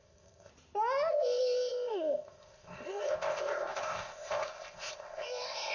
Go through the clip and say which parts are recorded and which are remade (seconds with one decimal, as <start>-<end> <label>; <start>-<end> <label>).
0.0-0.5 remade; 0.5-1.1 recorded; 1.1-5.7 remade